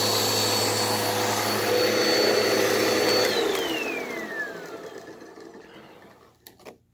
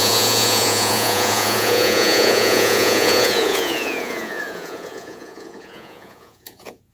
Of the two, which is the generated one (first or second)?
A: second